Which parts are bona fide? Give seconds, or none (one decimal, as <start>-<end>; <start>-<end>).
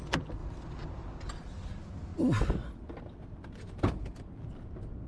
0.0-5.1